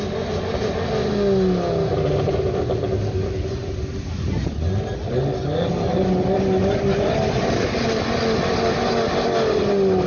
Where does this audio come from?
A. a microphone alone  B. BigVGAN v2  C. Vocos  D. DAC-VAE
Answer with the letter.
A